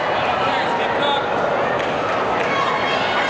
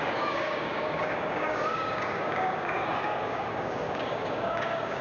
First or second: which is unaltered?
first